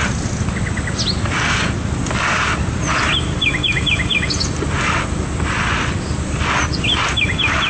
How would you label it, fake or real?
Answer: real